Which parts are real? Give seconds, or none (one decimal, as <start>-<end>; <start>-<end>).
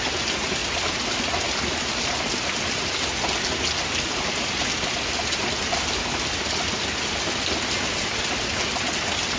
0.0-9.4